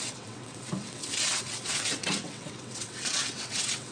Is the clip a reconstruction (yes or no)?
yes